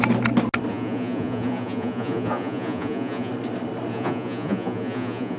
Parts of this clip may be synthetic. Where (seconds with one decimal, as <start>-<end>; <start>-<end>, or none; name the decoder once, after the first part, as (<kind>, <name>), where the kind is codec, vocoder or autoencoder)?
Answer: 0.7-3.3 (vocoder, Vocos); 3.9-5.4